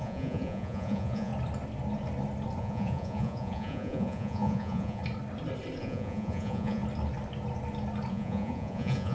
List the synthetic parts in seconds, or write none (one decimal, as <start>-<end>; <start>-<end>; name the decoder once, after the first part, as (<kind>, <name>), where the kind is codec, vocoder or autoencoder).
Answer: 0.0-1.3 (vocoder, Vocos); 2.6-5.0; 5.8-6.8; 8.1-9.1